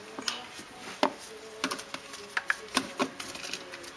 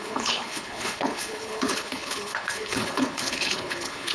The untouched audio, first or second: first